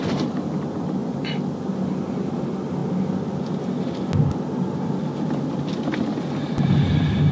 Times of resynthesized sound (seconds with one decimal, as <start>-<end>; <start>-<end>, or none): none